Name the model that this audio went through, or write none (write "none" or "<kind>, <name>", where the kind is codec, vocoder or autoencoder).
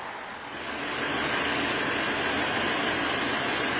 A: none